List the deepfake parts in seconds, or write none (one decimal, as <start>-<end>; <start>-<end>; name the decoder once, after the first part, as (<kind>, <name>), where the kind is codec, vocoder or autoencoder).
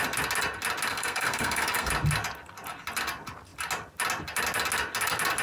0.9-1.9 (codec, SNAC)